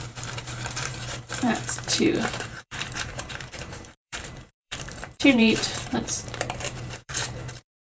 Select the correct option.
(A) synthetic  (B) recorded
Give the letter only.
A